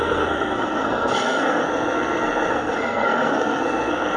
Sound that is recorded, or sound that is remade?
remade